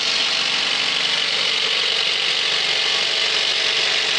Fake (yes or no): no